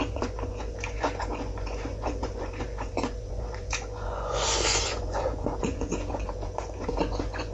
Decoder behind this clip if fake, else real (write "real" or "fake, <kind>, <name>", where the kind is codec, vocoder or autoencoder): fake, vocoder, Vocos